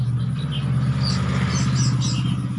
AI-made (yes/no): no